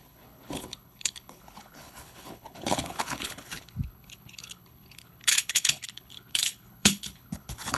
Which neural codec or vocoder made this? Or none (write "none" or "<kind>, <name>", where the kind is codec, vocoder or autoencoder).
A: codec, HILCodec